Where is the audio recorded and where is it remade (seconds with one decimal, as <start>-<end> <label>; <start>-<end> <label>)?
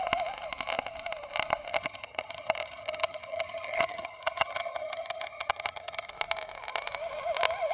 0.0-1.7 recorded; 1.7-6.1 remade; 6.1-7.7 recorded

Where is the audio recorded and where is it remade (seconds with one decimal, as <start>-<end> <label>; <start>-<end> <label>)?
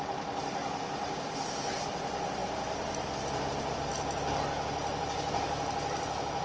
0.0-6.4 recorded